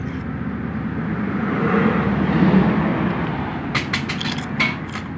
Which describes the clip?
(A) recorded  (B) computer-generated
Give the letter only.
A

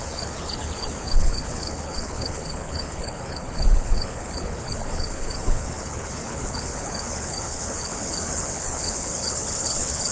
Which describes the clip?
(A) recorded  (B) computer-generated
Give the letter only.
B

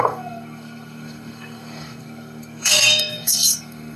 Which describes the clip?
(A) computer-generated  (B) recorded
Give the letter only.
A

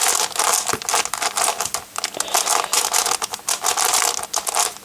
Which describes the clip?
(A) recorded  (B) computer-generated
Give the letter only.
A